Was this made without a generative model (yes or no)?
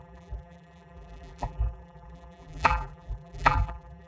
no